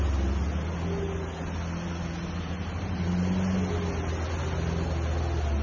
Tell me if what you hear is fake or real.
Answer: real